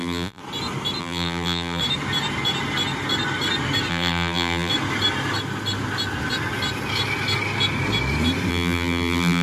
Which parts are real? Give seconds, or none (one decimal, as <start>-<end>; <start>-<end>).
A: 0.4-1.0; 1.8-3.9; 4.7-8.5